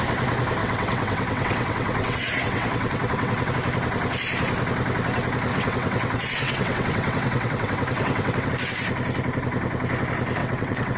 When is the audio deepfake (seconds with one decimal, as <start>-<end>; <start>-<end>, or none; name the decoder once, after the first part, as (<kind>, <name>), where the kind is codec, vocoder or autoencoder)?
0.6-3.5 (vocoder, WaveNeXt); 5.5-8.5; 10.4-11.0